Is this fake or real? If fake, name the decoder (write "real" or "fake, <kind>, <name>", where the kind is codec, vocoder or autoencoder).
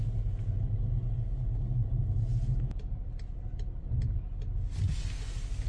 real